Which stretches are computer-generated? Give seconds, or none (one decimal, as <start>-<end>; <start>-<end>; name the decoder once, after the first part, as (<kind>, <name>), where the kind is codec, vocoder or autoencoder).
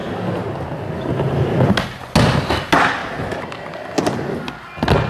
none